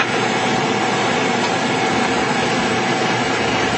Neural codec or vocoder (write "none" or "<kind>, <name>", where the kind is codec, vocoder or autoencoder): none